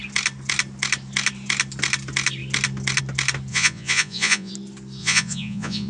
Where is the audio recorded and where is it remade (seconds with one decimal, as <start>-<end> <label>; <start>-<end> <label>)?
0.0-3.5 recorded; 3.5-4.5 remade; 4.5-5.0 recorded; 5.0-5.9 remade